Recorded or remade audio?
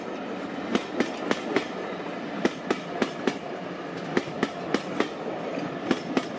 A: recorded